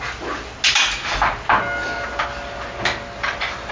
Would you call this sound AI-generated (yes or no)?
no